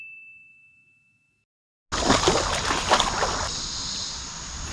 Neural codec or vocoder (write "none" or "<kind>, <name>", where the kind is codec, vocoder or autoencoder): none